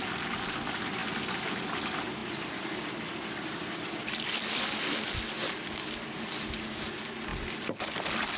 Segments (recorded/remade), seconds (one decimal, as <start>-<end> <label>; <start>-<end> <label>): 0.0-8.4 recorded